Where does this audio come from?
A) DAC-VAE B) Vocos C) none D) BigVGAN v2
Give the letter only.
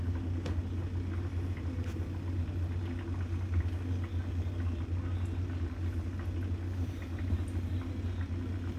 C